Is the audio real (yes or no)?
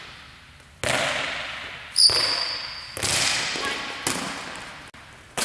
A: yes